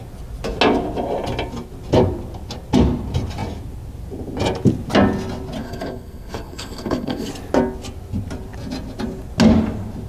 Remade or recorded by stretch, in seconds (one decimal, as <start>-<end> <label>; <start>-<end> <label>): 0.0-5.6 recorded; 5.6-7.3 remade; 7.3-10.1 recorded

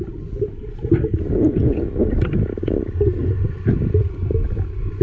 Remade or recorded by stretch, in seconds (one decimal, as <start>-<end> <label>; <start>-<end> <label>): 0.0-1.6 remade; 1.6-3.7 recorded; 3.7-5.0 remade

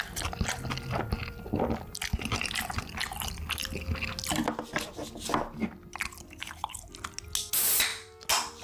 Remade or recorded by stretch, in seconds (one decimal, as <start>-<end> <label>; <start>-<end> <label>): 0.0-8.6 recorded

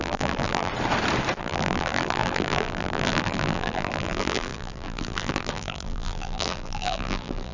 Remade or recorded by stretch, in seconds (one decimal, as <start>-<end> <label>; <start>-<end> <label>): 0.0-0.7 remade; 0.7-1.4 recorded; 1.4-7.5 remade

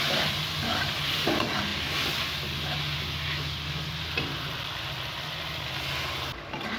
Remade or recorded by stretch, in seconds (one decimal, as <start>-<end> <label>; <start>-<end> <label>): 0.0-6.8 recorded

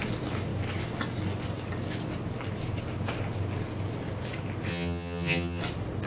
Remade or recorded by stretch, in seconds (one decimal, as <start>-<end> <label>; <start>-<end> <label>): 0.0-4.7 recorded; 4.7-5.6 remade; 5.6-6.1 recorded